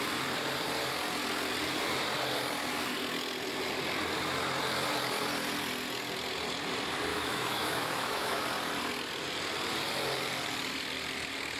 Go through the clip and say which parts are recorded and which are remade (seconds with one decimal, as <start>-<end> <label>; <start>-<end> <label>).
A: 0.0-7.1 recorded; 7.1-8.4 remade; 8.4-11.6 recorded